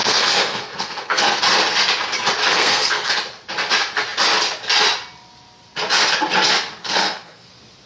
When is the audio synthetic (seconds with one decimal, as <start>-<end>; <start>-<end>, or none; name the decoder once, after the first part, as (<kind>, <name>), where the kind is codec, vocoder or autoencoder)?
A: 0.0-1.4 (codec, SNAC); 2.5-3.1; 6.8-7.5